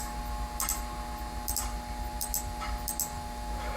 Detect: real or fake real